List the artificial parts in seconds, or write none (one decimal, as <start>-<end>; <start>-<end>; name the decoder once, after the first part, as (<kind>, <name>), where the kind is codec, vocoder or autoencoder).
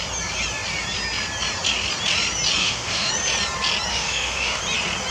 2.6-3.1 (autoencoder, DAC-VAE); 3.9-4.6